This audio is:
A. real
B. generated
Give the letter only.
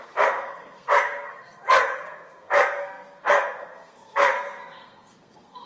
B